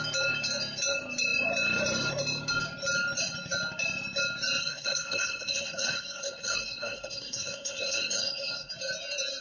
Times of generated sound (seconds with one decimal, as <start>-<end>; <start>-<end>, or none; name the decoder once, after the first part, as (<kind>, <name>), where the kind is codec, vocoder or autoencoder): 4.6-8.7 (codec, SNAC)